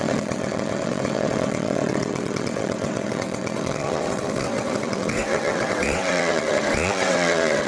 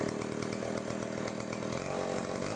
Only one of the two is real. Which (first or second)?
second